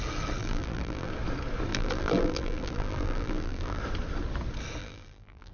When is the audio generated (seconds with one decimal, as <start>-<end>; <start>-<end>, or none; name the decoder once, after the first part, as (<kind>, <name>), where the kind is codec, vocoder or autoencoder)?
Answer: 0.4-1.1 (vocoder, BigVGAN v2); 1.7-3.8; 4.8-5.5